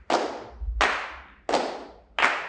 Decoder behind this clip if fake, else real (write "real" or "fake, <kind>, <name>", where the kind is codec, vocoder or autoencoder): real